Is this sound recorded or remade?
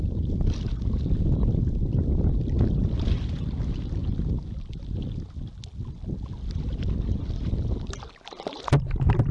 recorded